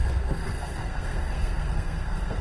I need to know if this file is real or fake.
fake